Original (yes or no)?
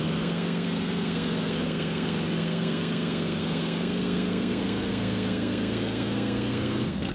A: no